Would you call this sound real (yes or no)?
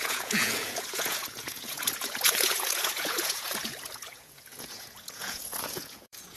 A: no